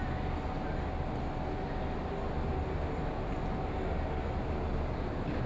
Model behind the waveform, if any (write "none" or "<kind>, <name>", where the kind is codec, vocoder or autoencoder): none